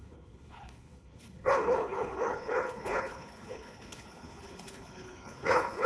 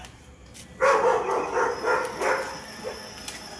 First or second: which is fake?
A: first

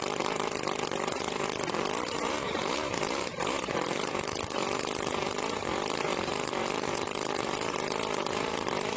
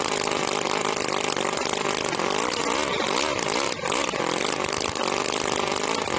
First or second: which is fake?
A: first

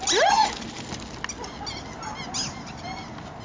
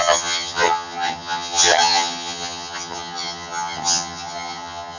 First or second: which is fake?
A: second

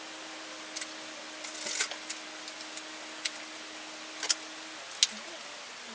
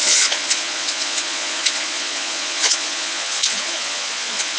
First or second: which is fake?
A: second